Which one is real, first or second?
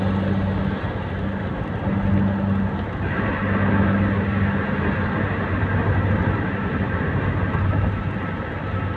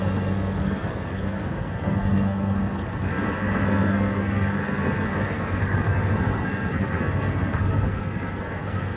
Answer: first